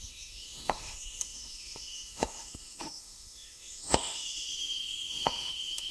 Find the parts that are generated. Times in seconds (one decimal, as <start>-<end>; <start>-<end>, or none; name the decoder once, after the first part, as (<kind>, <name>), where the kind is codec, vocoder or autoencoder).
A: 0.0-5.9 (autoencoder, DAC-VAE)